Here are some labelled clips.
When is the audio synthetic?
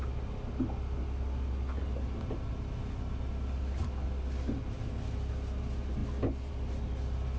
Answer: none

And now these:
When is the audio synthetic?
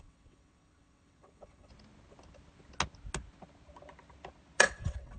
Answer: 0.0-1.7 (vocoder, WaveNeXt); 4.6-5.2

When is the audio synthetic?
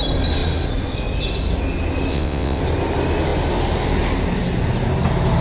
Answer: 2.1-2.6 (vocoder, WaveNeXt)